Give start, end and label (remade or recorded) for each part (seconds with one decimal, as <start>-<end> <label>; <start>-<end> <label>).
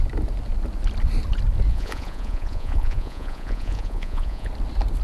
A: 0.0-1.7 recorded; 1.7-4.5 remade; 4.5-5.0 recorded